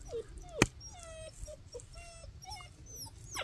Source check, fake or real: real